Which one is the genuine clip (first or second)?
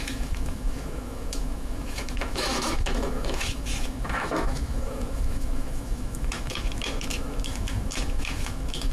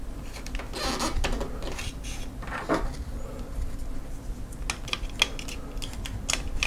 second